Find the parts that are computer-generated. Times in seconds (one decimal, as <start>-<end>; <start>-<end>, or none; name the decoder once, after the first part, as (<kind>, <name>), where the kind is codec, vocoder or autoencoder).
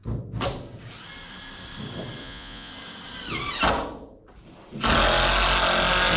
2.2-2.7 (vocoder, Vocos)